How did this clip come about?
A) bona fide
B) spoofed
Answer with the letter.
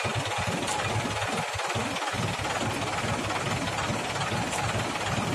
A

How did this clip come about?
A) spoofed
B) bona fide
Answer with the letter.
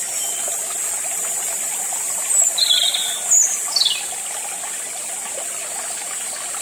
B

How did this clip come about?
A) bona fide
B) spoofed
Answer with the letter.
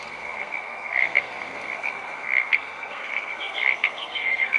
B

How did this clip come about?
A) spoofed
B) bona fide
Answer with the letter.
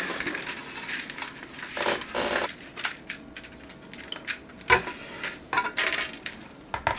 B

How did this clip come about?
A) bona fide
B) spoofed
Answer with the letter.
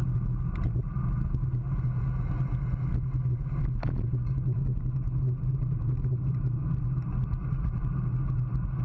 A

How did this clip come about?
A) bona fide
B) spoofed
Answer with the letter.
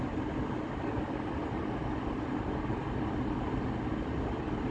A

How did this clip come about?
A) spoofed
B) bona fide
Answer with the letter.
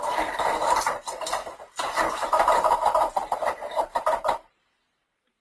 A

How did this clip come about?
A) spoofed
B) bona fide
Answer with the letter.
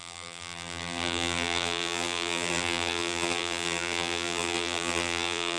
A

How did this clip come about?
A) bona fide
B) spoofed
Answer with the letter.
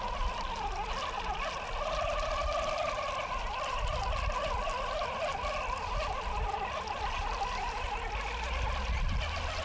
A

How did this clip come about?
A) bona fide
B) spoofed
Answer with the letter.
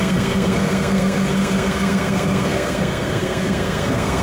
B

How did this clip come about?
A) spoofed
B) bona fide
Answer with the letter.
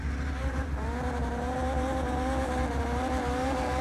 A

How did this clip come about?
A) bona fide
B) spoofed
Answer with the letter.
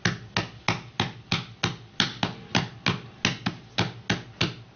A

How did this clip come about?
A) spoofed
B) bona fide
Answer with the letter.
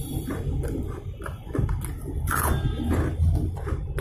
B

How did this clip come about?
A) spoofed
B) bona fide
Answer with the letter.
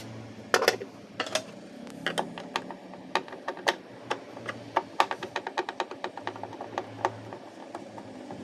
B